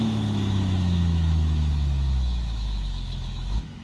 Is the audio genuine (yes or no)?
no